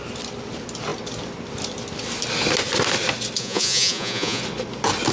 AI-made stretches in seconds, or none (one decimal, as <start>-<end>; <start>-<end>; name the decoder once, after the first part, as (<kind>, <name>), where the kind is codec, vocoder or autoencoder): 3.4-4.4 (vocoder, Vocos)